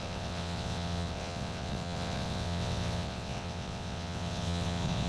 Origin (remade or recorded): remade